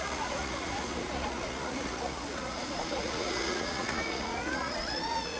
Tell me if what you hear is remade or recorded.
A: remade